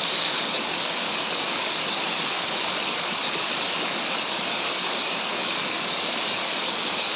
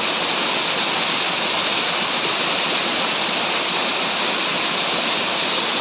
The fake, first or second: first